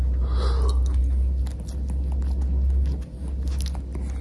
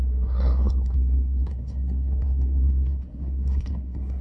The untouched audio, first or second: first